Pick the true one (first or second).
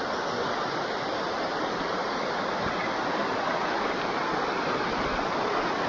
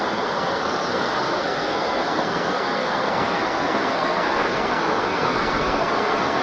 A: first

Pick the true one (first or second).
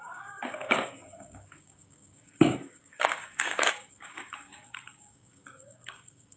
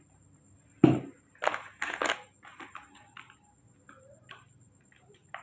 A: second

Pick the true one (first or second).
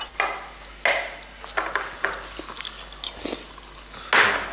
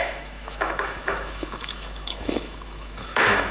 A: first